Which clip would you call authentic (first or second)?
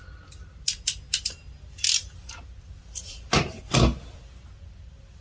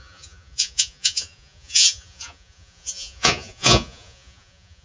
first